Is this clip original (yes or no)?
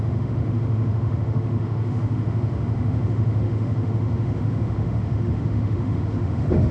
no